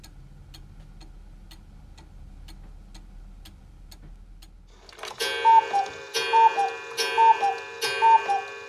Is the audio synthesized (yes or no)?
no